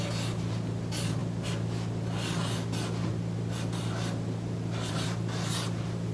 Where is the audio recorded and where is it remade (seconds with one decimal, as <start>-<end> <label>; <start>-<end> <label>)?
0.0-6.1 recorded

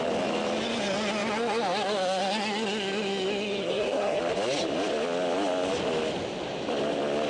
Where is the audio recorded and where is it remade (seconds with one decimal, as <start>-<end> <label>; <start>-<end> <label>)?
0.0-3.6 recorded; 3.6-4.2 remade; 4.2-7.3 recorded

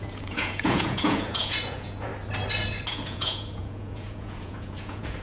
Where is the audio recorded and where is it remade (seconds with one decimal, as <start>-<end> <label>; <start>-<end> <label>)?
0.0-2.1 remade; 2.1-2.9 recorded; 2.9-5.2 remade